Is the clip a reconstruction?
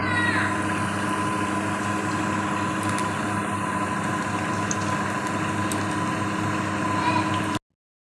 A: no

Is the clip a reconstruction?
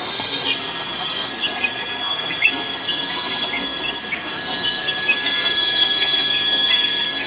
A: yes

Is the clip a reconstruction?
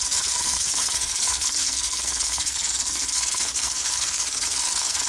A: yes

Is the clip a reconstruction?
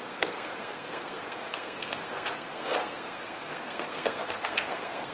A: yes